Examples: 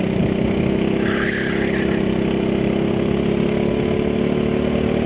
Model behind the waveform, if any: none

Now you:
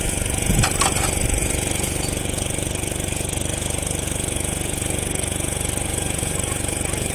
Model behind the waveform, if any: vocoder, Vocos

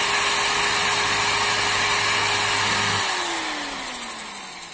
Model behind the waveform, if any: none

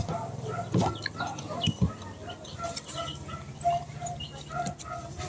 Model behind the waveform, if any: none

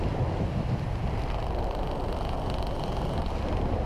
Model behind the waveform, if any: none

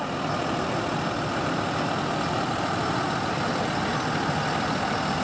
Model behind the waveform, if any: none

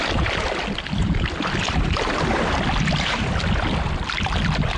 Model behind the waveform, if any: none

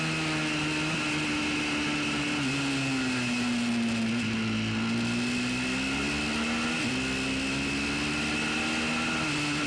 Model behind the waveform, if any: none